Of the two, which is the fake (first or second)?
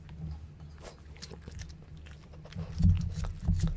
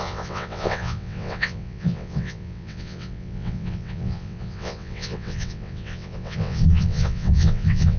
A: second